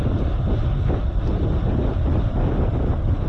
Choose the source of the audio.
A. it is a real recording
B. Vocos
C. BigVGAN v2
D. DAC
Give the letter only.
A